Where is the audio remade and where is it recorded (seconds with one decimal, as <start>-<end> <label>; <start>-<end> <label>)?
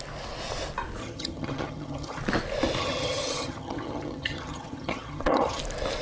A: 0.0-1.0 recorded; 1.0-2.2 remade; 2.2-2.8 recorded; 2.8-5.6 remade; 5.6-6.0 recorded